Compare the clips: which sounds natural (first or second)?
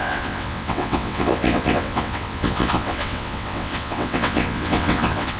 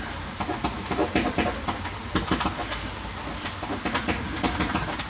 second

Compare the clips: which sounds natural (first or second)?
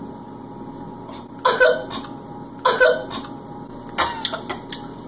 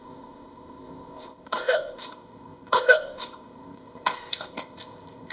first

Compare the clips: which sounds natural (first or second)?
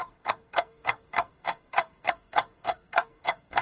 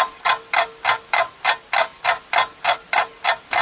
second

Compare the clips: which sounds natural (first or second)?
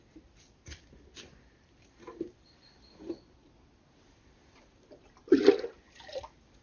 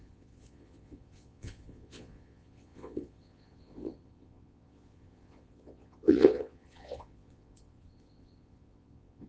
first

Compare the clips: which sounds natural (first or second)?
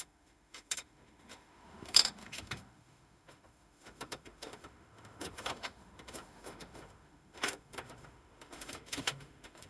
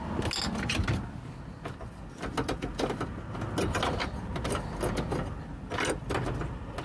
second